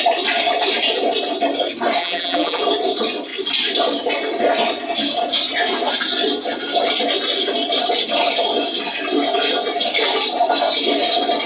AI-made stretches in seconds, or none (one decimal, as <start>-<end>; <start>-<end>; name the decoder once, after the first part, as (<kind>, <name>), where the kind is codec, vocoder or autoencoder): 2.0-2.6 (vocoder, BigVGAN v2)